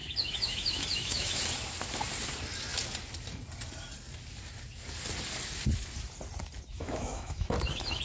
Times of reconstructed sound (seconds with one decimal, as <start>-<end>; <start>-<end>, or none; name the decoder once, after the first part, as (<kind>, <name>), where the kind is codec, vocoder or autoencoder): 0.0-1.4 (autoencoder, DAC-VAE); 6.7-8.0